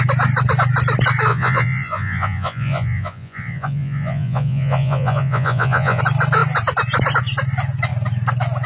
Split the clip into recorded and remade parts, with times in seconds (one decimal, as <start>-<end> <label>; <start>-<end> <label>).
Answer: 0.0-1.3 recorded; 1.3-6.0 remade; 6.0-8.7 recorded